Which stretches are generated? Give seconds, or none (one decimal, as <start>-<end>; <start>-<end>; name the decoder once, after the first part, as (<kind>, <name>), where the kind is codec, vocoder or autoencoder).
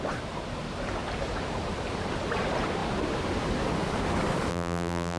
4.5-5.2 (vocoder, BigVGAN v2)